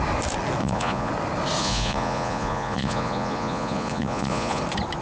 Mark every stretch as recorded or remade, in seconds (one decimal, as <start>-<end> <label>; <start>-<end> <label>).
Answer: 0.0-0.6 recorded; 0.6-1.1 remade; 1.1-1.6 recorded; 1.6-4.6 remade; 4.6-5.0 recorded